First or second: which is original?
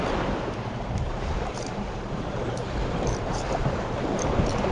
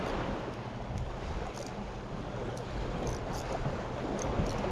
second